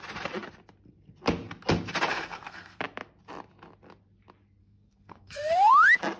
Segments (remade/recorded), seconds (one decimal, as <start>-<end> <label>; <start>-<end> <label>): 0.0-2.1 recorded; 2.1-2.8 remade; 2.8-4.6 recorded; 4.6-5.7 remade; 5.7-6.2 recorded